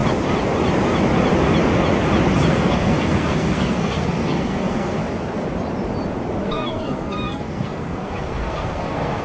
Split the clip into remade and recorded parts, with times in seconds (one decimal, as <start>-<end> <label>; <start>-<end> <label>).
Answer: 0.0-2.5 recorded; 2.5-5.0 remade; 5.0-6.4 recorded; 6.4-9.2 remade